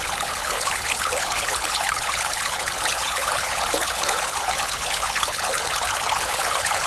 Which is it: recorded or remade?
remade